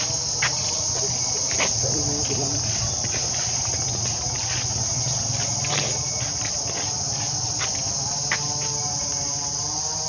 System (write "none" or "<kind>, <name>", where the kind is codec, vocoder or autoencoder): none